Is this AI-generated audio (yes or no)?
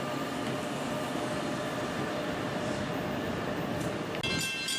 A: no